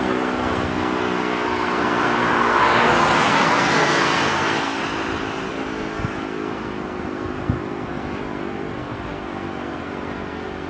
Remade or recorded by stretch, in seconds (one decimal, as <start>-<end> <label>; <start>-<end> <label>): 0.0-4.8 remade; 4.8-5.5 recorded; 5.5-10.7 remade